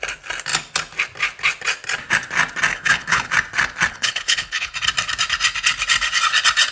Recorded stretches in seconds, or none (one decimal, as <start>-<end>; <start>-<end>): 0.0-2.7; 3.3-3.9; 4.7-6.7